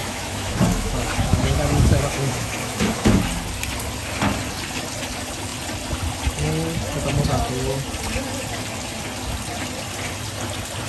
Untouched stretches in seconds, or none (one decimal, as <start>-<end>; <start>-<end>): 3.2-10.9